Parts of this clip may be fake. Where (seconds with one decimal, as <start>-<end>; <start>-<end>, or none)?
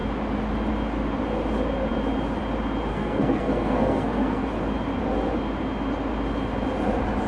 2.9-4.5